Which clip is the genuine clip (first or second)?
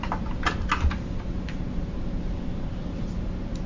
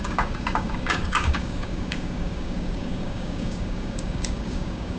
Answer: first